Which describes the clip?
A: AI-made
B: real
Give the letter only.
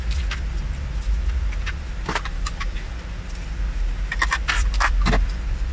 B